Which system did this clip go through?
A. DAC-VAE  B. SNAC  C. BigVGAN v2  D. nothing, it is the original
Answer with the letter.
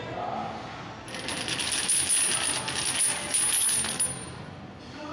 D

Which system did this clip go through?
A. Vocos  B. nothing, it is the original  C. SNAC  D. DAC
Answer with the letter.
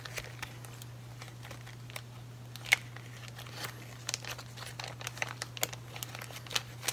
B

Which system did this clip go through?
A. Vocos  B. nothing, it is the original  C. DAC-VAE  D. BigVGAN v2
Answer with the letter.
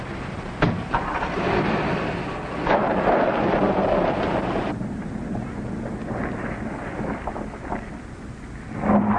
B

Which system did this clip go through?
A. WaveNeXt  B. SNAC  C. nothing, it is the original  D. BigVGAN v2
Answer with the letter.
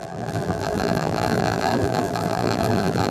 D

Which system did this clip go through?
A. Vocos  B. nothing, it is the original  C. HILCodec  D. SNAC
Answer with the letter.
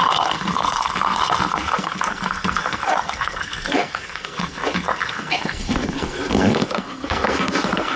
D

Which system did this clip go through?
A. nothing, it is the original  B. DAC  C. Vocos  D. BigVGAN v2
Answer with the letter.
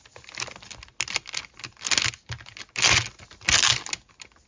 A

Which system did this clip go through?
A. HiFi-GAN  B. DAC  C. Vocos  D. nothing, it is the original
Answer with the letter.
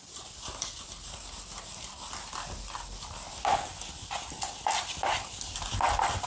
D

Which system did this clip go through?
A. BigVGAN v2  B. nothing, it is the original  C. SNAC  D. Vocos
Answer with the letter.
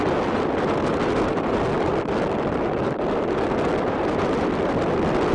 A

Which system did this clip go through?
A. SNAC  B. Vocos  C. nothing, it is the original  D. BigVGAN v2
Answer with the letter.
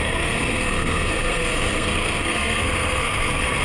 A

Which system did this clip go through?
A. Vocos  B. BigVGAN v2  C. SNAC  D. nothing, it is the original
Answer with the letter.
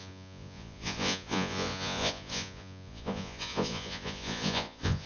A